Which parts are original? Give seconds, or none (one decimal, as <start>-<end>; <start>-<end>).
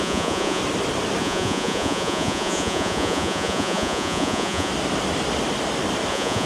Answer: 0.6-1.2; 4.7-6.1